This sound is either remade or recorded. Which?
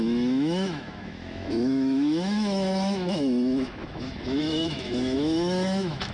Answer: remade